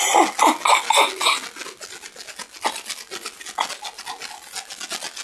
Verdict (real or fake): real